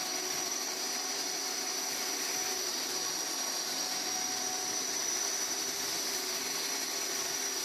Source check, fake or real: real